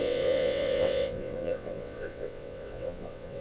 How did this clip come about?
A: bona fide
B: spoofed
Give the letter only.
B